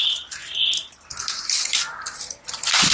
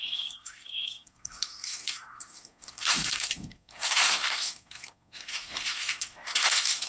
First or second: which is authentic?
first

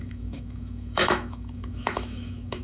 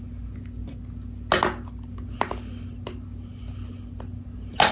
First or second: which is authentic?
second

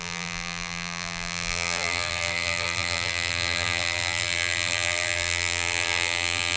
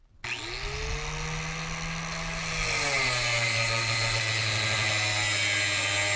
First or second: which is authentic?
second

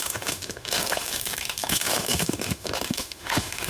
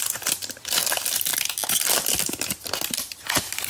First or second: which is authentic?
second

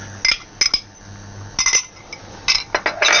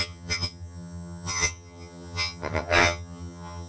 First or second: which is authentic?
first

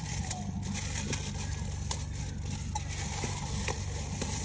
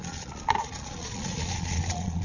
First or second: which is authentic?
first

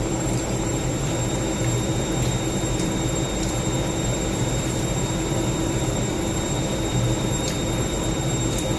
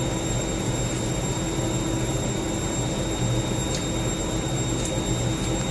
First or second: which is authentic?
second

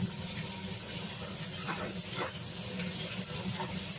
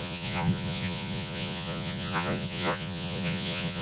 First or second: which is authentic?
first